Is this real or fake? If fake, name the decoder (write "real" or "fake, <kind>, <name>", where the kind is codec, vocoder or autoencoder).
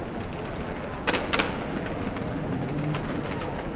fake, vocoder, BigVGAN v2